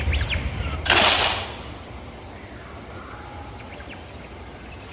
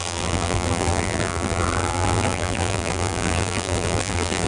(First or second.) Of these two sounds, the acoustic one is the first